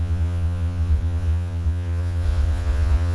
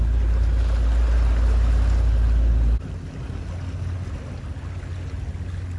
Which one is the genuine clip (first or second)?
second